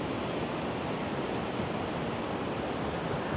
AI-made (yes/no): no